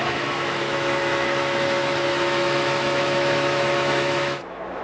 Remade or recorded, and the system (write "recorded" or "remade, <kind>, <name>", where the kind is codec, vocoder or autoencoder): remade, autoencoder, DAC-VAE